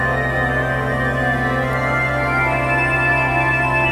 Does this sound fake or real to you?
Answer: real